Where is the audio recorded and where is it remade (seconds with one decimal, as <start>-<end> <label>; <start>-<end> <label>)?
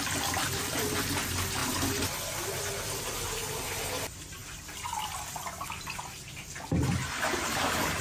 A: 0.0-8.0 recorded